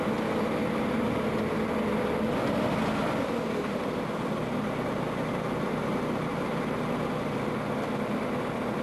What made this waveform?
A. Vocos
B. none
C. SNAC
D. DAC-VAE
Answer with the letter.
B